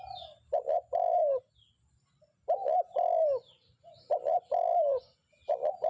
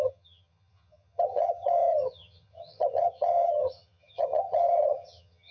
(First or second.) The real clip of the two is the first